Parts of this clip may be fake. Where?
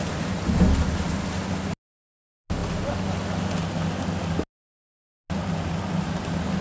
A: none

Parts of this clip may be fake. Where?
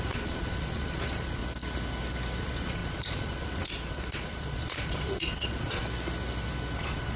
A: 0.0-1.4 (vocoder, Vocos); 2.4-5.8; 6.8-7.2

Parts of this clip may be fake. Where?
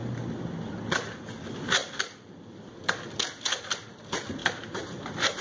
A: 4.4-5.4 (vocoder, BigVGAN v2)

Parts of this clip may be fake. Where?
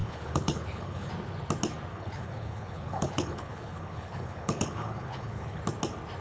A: 0.0-1.1 (codec, HILCodec); 1.9-5.6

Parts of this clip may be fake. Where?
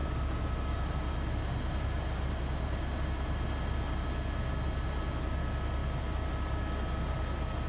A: none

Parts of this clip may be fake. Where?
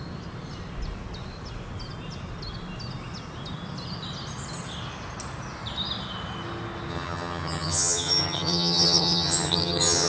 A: 6.9-10.1 (vocoder, HiFi-GAN)